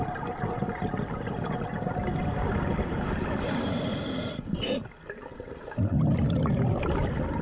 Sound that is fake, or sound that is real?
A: real